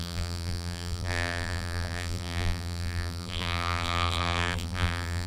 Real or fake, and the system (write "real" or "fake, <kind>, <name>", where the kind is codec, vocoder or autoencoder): fake, vocoder, BigVGAN v2